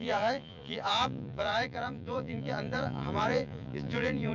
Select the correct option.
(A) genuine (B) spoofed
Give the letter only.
B